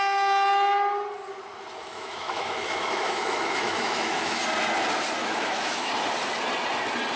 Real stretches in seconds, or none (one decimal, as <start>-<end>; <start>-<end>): 0.0-1.8; 4.4-5.2; 5.9-7.2